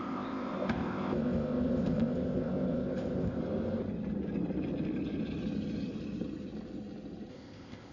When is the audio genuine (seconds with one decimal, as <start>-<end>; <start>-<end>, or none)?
3.4-7.3